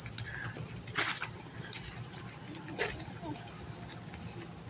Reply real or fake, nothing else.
real